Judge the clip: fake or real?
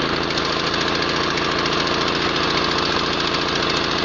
real